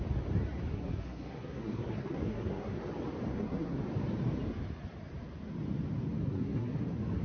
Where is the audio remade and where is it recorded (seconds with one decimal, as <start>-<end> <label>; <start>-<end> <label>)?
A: 0.0-0.7 recorded; 0.7-2.8 remade; 2.8-3.3 recorded; 3.3-3.8 remade; 3.8-6.2 recorded; 6.2-6.8 remade; 6.8-7.2 recorded